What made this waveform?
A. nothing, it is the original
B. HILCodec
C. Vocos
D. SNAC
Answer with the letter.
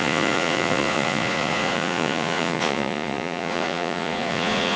C